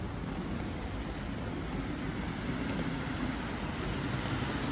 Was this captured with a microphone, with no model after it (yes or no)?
yes